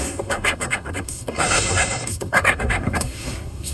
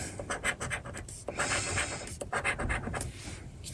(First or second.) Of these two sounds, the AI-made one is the first